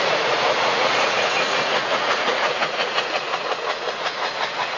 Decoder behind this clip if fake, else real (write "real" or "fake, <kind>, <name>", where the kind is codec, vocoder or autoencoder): fake, vocoder, Vocos